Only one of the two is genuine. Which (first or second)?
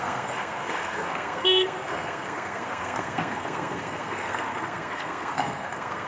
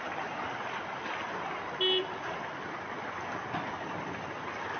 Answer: second